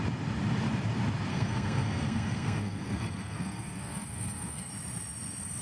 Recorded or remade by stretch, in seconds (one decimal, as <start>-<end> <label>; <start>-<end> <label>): 0.0-1.3 recorded; 1.3-4.7 remade; 4.7-5.6 recorded